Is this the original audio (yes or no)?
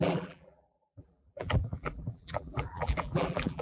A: no